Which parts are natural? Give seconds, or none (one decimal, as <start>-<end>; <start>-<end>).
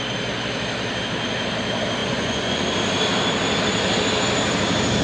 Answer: 0.0-2.0; 2.6-5.0